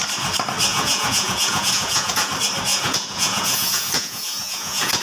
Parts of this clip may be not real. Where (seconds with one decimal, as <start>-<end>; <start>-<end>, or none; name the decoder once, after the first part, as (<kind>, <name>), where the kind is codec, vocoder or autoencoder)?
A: 0.7-2.3 (vocoder, Vocos); 2.7-5.0